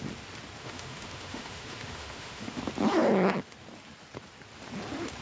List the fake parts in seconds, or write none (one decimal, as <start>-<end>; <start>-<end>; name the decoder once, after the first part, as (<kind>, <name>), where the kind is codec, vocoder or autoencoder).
0.6-2.6 (autoencoder, DAC-VAE)